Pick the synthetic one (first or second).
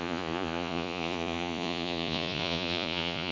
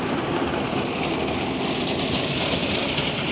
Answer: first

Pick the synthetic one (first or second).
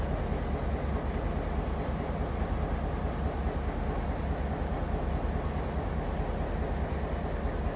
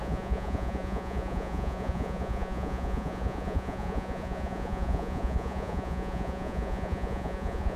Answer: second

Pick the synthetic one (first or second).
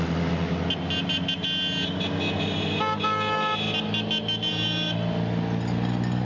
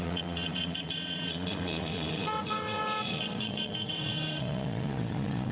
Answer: second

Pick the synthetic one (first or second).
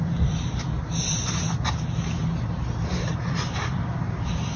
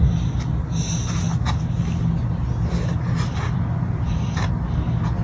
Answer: first